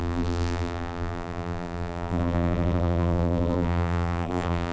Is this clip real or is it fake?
fake